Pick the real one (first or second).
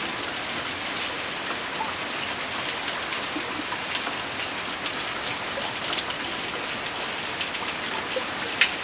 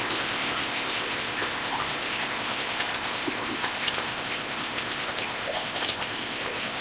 first